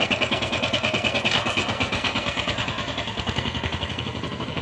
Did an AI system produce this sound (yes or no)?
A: yes